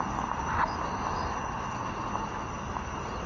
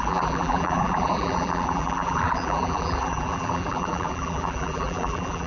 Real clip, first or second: first